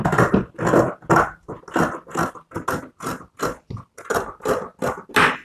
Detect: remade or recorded recorded